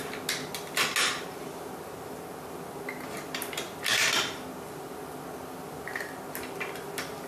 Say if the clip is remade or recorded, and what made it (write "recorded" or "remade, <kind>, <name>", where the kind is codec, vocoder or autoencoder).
recorded